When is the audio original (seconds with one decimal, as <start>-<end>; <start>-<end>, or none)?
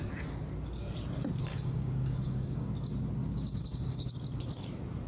0.0-1.5; 2.7-3.2; 4.1-5.1